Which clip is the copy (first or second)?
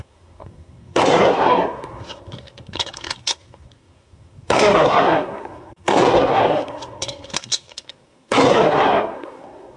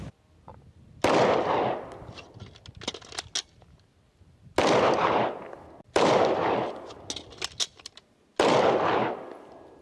first